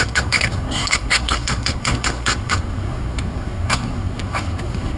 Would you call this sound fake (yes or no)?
yes